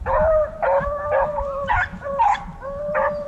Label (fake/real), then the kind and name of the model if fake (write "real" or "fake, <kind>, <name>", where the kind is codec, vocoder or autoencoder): real